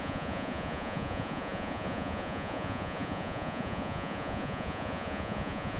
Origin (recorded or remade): remade